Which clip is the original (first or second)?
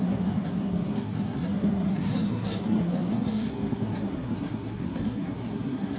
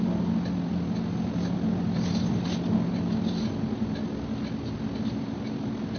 second